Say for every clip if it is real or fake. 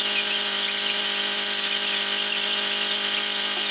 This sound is real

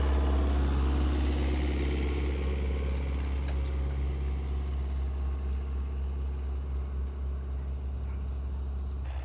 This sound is real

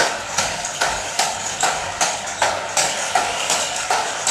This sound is fake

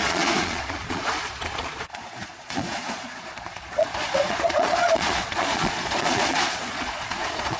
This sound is fake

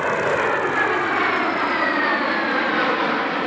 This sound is real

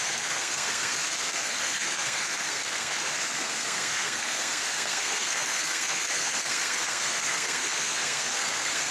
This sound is fake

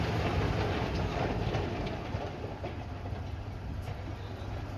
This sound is real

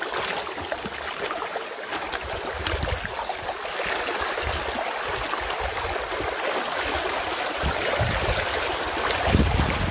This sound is real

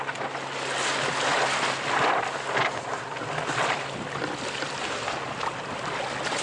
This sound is real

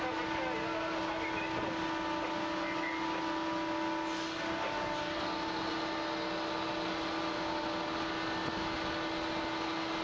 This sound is real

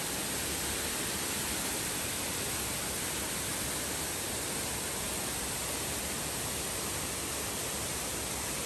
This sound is real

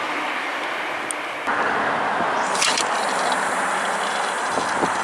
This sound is real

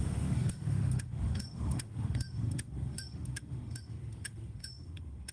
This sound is fake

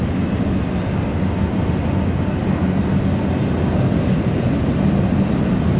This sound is real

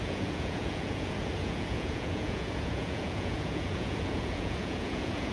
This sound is fake